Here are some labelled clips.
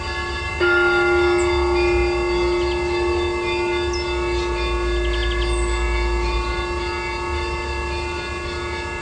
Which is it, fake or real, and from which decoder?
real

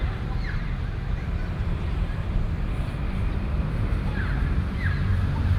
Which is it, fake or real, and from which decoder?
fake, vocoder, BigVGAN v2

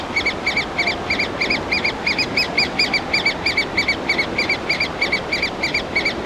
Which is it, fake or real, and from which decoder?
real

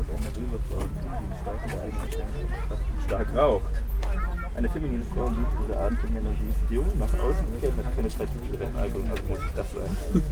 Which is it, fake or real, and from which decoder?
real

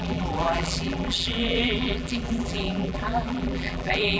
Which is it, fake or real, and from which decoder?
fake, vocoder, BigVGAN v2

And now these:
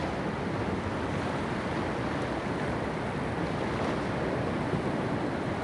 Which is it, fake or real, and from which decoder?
real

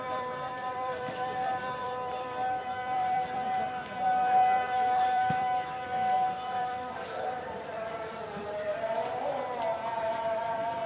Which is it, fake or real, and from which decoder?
fake, vocoder, BigVGAN v2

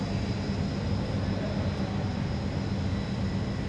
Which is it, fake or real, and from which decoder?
real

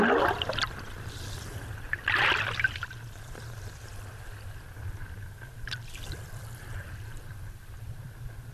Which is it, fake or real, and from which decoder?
fake, vocoder, BigVGAN v2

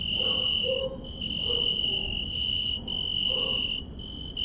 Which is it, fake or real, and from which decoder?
real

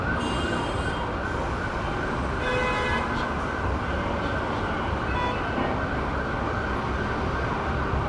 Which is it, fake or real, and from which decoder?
real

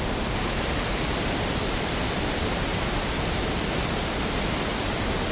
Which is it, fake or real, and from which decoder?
fake, vocoder, BigVGAN v2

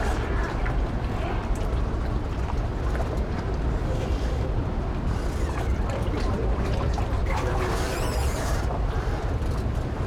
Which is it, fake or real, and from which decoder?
fake, vocoder, BigVGAN v2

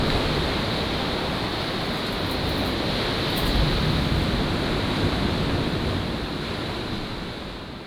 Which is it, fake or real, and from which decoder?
real